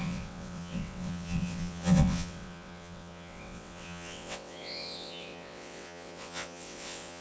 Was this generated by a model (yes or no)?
yes